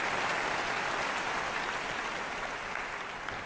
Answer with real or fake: real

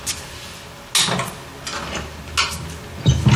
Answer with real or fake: real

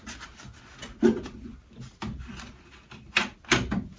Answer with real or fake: real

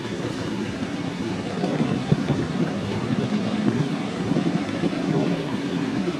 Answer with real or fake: fake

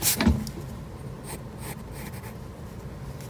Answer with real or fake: real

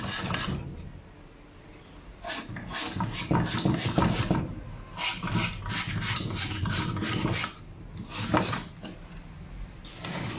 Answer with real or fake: real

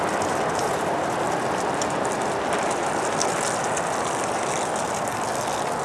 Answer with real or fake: real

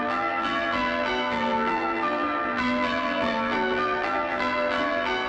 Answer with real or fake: fake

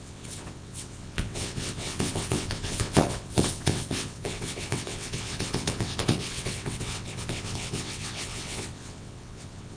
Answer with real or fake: fake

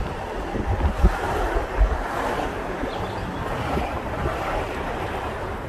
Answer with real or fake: fake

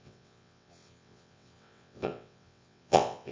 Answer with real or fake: fake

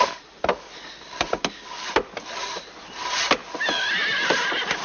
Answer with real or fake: fake